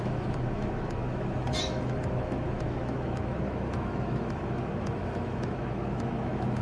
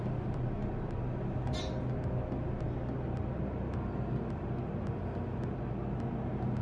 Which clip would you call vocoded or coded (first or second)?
first